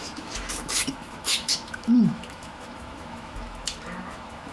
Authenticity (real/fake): fake